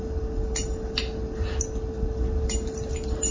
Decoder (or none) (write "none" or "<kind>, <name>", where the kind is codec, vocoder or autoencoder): none